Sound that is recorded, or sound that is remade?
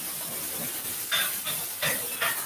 recorded